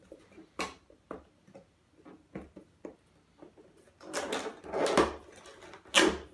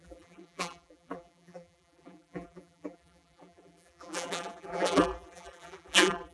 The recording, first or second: first